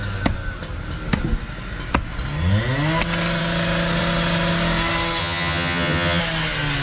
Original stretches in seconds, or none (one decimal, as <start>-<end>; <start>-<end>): 0.0-5.2; 6.2-6.8